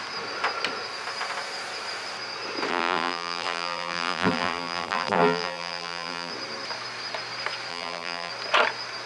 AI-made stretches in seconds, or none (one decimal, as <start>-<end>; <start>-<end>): 2.7-6.3; 7.7-8.3